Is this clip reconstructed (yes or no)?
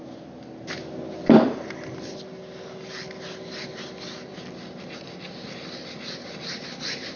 no